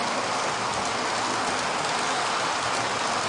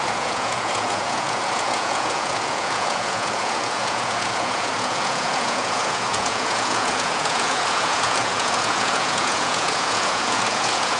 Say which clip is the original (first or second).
first